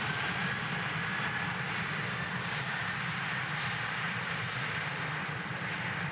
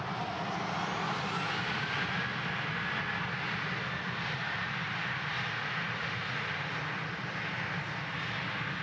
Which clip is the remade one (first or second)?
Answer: first